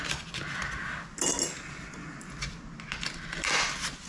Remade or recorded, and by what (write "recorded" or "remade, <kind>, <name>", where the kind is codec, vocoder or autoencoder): recorded